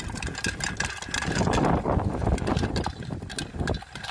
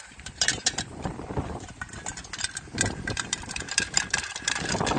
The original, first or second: first